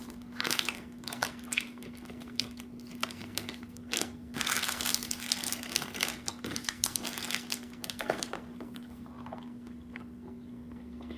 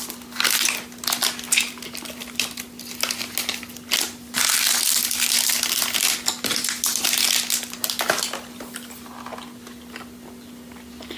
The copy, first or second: first